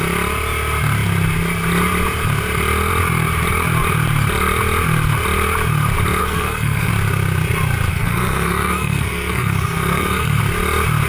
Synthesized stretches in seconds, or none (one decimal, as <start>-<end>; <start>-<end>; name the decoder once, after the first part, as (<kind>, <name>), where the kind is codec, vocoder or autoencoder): 6.2-6.9 (codec, SNAC); 7.9-10.4